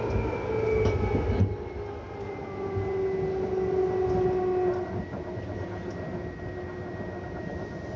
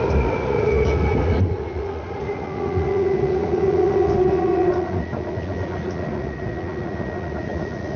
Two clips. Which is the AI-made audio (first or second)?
second